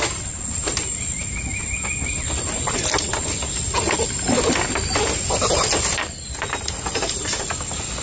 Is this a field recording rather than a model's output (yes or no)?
yes